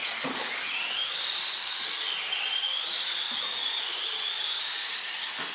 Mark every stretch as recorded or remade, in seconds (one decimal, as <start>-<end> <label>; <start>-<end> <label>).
0.0-5.5 recorded